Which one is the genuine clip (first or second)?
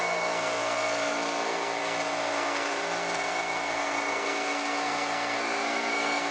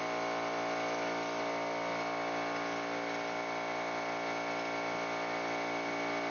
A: second